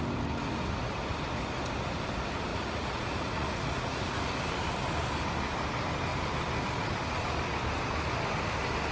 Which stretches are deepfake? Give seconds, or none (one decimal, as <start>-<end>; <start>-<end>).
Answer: 2.5-4.3